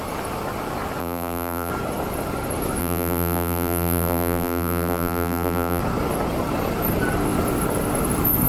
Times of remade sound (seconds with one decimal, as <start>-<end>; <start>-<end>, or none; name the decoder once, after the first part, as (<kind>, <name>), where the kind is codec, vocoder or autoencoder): 1.0-1.7 (vocoder, BigVGAN v2); 2.8-5.8